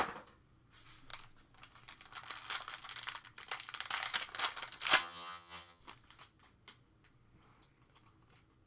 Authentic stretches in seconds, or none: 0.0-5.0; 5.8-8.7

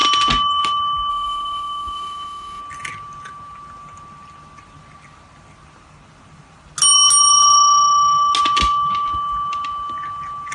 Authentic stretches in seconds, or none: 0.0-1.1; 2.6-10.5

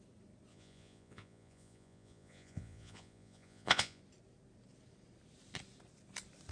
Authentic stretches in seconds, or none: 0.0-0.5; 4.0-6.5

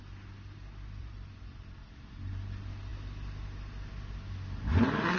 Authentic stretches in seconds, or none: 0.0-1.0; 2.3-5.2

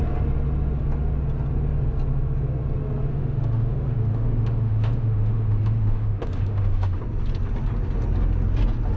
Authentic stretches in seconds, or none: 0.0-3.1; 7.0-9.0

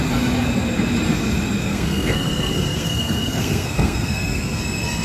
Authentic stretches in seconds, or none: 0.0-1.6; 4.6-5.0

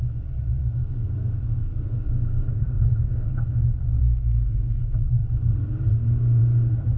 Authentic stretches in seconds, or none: 0.0-0.6; 4.8-7.0